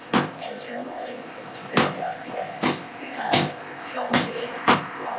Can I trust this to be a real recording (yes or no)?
no